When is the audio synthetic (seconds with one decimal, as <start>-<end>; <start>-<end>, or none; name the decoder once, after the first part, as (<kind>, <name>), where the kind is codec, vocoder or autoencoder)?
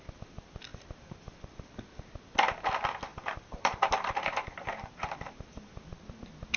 3.1-5.8 (vocoder, BigVGAN v2)